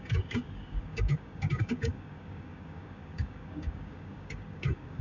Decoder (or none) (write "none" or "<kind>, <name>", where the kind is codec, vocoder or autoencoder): codec, DAC